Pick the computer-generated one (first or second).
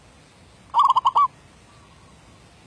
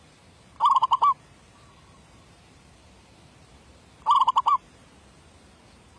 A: second